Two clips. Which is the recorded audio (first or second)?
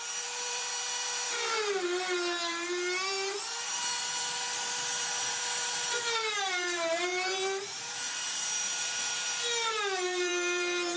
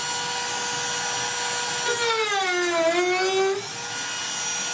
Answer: second